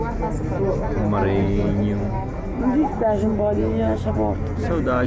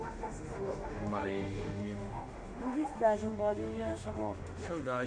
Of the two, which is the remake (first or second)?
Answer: second